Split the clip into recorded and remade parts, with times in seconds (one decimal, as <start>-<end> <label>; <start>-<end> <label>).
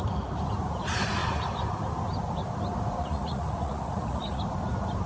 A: 0.0-3.0 recorded; 3.0-4.4 remade; 4.4-5.1 recorded